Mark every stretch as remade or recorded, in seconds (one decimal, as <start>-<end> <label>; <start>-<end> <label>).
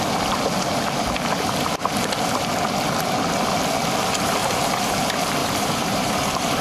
0.0-4.4 recorded; 4.4-5.0 remade; 5.0-5.4 recorded; 5.4-6.6 remade